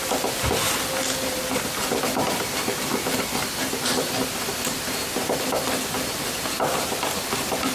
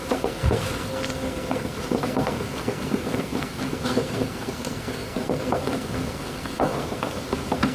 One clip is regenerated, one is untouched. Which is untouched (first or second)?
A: first